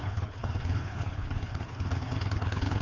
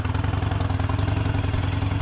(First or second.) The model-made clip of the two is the first